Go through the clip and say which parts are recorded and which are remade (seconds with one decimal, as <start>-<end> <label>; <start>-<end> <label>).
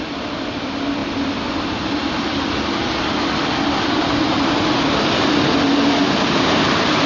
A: 0.0-7.1 recorded